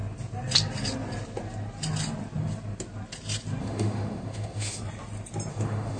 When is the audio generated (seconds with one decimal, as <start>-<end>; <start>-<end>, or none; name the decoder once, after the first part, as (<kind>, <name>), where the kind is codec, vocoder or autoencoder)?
3.6-4.8 (autoencoder, DAC-VAE); 5.5-6.0